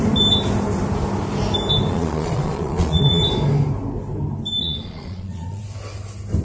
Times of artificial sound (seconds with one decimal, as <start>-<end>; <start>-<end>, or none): 1.9-3.2; 4.6-5.6